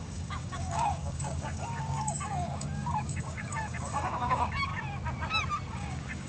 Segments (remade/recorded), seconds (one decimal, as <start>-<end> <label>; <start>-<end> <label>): 0.0-4.7 remade; 4.7-5.7 recorded; 5.7-6.3 remade